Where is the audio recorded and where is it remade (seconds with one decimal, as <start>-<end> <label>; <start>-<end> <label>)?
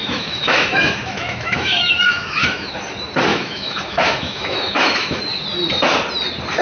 0.0-2.7 remade; 2.7-3.3 recorded; 3.3-5.2 remade; 5.2-6.6 recorded